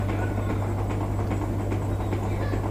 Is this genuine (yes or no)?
yes